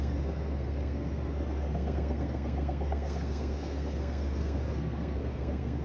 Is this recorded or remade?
remade